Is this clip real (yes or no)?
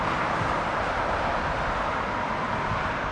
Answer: yes